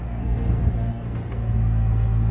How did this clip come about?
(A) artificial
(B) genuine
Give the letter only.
A